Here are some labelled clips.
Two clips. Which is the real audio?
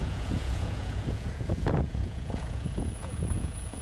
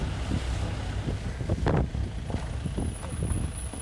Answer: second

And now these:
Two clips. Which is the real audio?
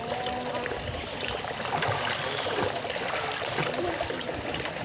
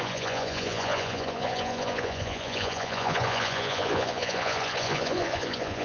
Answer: first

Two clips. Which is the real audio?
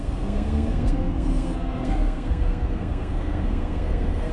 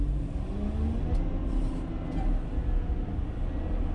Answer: second